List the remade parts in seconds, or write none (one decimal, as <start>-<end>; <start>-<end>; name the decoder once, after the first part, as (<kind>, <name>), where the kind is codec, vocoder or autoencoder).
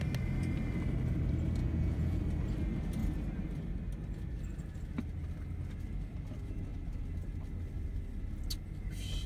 1.6-2.2 (vocoder, Vocos)